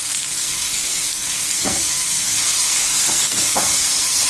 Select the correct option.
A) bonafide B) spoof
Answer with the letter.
B